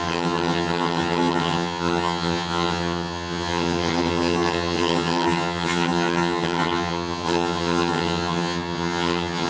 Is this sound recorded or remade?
remade